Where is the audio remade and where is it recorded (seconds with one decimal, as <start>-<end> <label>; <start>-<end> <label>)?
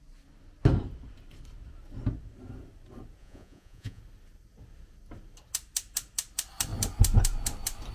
0.0-3.2 recorded; 3.2-4.0 remade; 4.0-7.9 recorded